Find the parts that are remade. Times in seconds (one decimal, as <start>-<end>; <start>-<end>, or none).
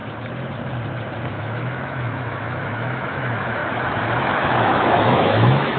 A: 1.3-3.6; 4.2-5.8